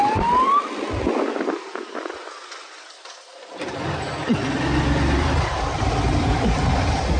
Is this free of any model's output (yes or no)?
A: yes